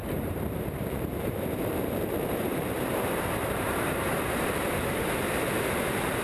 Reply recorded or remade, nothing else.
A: remade